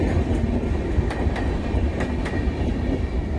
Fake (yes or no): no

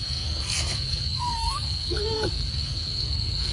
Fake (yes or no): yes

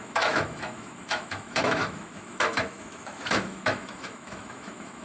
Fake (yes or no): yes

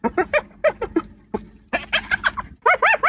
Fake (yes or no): no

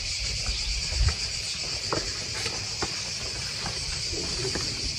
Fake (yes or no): yes